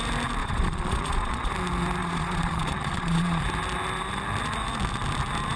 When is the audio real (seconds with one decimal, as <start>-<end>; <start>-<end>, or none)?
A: 0.0-0.4; 1.5-2.0; 3.4-5.6